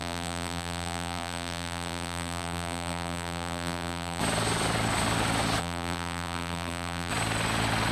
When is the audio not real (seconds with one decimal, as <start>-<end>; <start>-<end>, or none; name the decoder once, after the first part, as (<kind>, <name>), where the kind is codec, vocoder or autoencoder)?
0.0-4.2 (vocoder, BigVGAN v2); 5.6-7.1